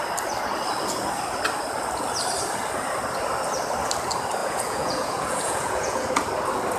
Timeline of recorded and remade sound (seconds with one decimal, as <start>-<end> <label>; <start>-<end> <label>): 0.0-4.4 recorded; 4.4-6.1 remade; 6.1-6.8 recorded